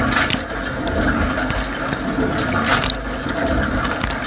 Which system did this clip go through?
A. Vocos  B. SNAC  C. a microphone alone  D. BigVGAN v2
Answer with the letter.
C